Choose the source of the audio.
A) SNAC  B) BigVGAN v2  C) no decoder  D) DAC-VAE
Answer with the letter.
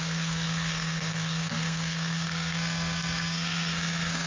A